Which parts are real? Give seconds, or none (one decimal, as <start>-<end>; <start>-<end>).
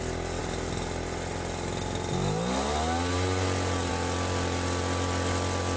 0.0-5.8